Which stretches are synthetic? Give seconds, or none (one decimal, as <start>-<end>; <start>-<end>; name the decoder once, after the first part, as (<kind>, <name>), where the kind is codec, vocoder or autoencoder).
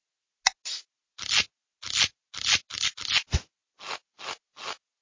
none